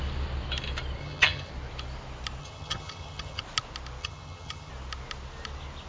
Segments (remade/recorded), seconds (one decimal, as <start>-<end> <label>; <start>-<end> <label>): 0.0-1.0 recorded; 1.0-1.5 remade; 1.5-2.4 recorded; 2.4-3.4 remade; 3.4-4.0 recorded; 4.0-4.7 remade; 4.7-5.9 recorded